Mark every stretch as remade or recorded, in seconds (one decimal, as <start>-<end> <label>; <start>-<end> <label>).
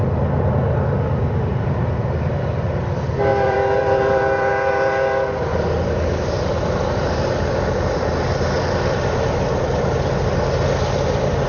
0.0-1.5 recorded; 1.5-2.3 remade; 2.3-3.3 recorded; 3.3-4.5 remade; 4.5-5.5 recorded; 5.5-9.9 remade; 9.9-11.5 recorded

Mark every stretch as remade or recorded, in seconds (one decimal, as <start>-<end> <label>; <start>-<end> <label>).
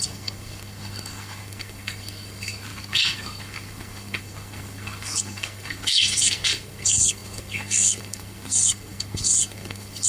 0.0-10.1 remade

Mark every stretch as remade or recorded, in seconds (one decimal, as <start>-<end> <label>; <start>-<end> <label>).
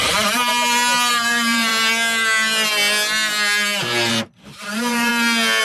0.0-0.5 remade; 0.5-1.1 recorded; 1.1-1.7 remade; 1.7-4.1 recorded; 4.1-5.1 remade; 5.1-5.6 recorded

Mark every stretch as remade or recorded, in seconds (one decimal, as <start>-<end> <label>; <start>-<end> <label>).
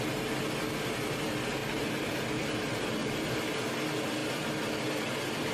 0.0-1.6 recorded; 1.6-2.5 remade; 2.5-3.0 recorded; 3.0-3.7 remade; 3.7-5.5 recorded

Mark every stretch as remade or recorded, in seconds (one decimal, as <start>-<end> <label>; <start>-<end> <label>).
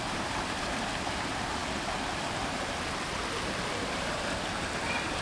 0.0-5.2 recorded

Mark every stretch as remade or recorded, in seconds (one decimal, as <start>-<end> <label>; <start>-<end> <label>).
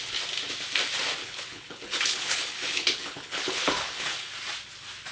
0.0-1.2 recorded; 1.2-4.3 remade; 4.3-5.1 recorded